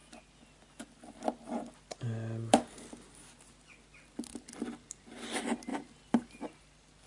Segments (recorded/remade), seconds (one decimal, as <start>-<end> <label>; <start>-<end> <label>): 0.0-7.1 recorded